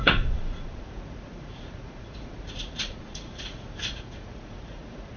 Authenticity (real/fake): fake